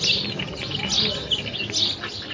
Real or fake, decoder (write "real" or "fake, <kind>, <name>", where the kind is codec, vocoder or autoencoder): real